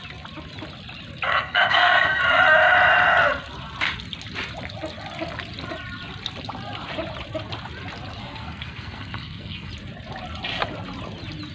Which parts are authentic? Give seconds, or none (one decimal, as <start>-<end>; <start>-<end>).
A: 0.0-1.3; 2.2-8.2; 9.7-11.5